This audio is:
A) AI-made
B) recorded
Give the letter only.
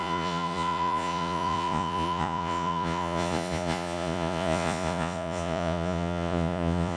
A